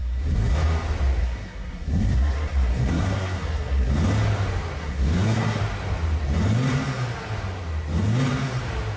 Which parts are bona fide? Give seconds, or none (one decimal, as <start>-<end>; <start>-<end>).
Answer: 0.5-1.2; 3.9-4.8; 5.6-9.0